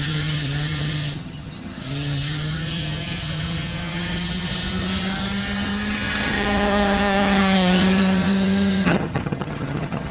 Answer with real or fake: fake